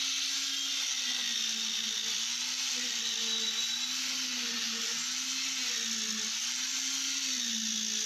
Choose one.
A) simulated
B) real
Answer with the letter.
B